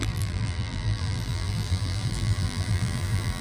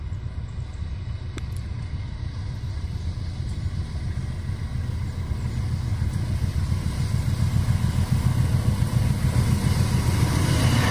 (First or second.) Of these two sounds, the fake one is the first